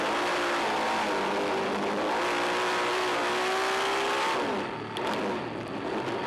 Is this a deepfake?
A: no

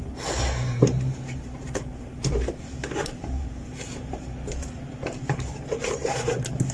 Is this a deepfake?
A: yes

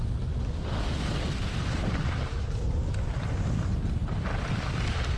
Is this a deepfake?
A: no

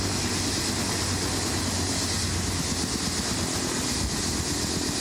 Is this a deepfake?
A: no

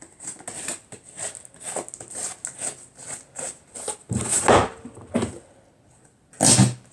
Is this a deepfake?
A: no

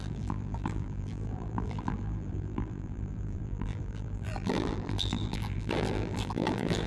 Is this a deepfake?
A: yes